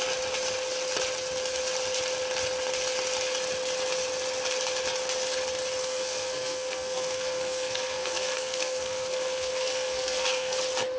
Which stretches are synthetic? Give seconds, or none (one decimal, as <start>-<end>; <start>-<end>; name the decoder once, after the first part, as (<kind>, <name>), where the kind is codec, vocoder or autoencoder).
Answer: 5.8-10.6 (codec, SNAC)